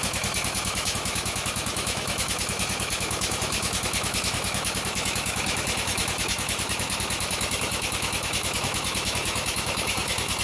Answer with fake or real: fake